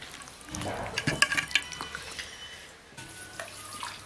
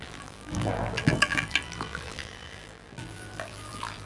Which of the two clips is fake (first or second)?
second